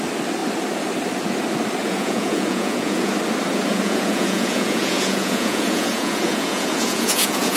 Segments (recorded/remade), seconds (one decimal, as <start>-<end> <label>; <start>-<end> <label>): 0.0-1.8 recorded; 1.8-3.1 remade; 3.1-3.7 recorded; 3.7-7.6 remade